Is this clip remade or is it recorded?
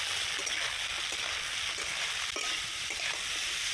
recorded